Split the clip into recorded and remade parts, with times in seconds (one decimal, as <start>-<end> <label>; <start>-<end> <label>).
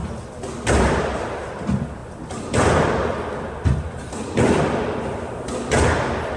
0.0-6.4 recorded